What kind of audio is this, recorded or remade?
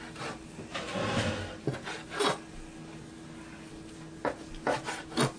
recorded